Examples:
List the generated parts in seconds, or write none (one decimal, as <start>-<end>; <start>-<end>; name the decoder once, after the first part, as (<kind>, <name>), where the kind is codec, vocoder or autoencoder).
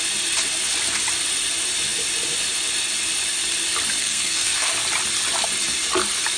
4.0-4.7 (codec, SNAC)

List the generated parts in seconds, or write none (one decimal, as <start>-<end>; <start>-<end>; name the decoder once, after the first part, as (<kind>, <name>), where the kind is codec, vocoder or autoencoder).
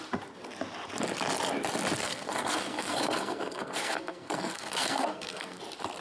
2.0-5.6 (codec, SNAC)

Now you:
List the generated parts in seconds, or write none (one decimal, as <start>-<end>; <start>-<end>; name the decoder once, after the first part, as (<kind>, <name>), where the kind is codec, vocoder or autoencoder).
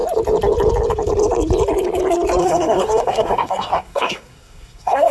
2.4-5.1 (codec, SNAC)